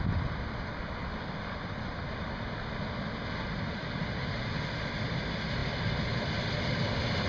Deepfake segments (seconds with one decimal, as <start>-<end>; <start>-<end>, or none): none